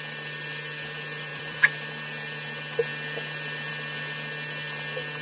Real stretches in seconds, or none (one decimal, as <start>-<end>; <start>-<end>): 0.0-1.3; 1.9-5.2